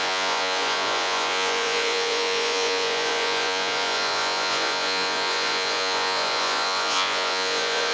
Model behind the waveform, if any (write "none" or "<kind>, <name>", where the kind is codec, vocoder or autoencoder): vocoder, Vocos